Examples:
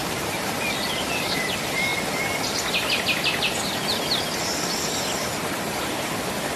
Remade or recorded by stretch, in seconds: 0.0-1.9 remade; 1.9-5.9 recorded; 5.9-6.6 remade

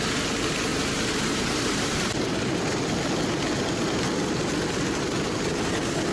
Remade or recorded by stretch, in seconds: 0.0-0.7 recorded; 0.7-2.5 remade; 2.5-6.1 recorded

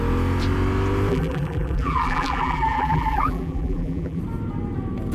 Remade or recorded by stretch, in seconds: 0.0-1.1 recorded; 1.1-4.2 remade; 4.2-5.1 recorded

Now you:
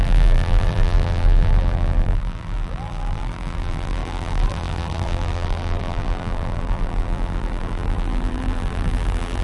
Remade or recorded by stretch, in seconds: 0.0-9.4 remade